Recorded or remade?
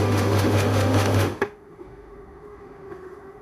remade